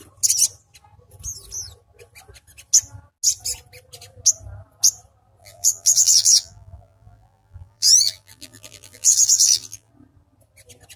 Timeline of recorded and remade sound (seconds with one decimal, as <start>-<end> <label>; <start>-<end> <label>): 0.0-5.4 recorded; 5.4-9.9 remade; 9.9-11.0 recorded